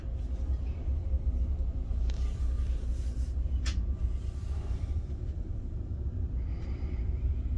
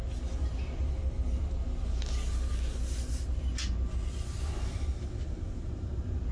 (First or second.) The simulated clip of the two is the first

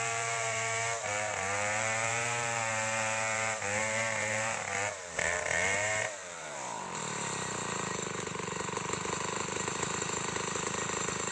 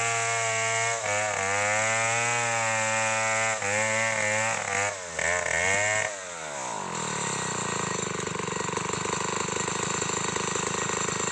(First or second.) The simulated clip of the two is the first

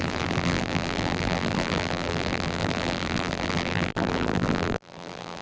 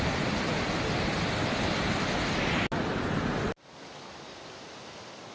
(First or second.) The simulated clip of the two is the first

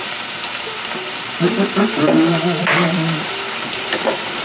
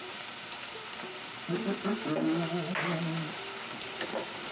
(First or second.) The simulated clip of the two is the first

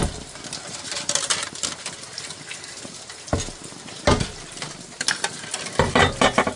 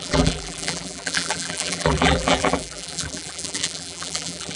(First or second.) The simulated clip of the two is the second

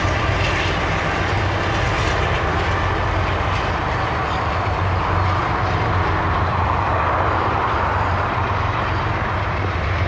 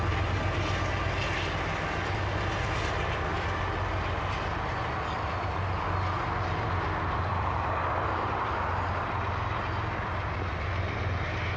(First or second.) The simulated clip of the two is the first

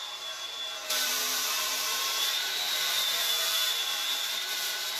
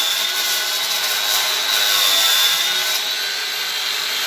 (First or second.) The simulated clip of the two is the first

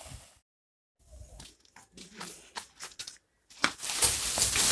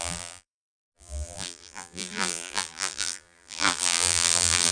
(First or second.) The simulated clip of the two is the second